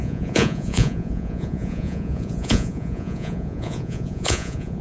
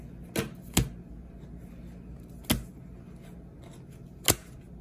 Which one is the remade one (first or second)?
first